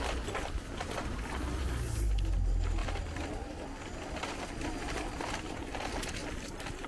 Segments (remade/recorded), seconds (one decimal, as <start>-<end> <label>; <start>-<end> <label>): 0.0-6.9 recorded